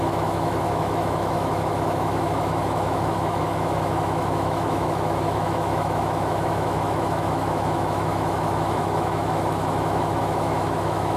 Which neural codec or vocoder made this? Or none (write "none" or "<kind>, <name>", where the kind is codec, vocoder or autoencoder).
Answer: autoencoder, DAC-VAE